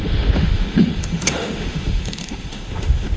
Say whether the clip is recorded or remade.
remade